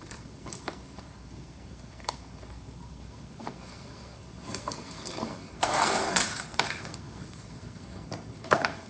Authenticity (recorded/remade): remade